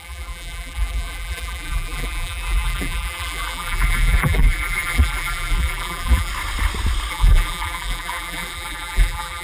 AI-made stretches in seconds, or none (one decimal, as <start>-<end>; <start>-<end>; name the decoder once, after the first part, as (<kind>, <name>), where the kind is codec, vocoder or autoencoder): 0.0-6.3 (vocoder, BigVGAN v2); 7.1-9.4